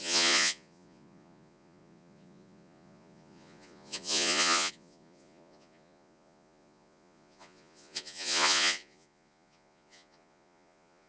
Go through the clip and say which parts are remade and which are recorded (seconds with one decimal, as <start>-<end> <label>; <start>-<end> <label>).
0.0-11.1 remade